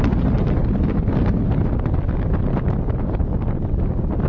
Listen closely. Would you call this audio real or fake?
real